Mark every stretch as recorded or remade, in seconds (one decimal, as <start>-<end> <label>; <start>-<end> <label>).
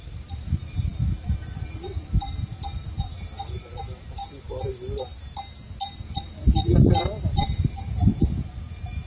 0.0-4.2 remade; 4.2-6.0 recorded; 6.0-9.1 remade